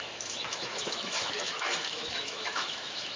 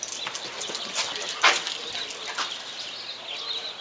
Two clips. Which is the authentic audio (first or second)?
second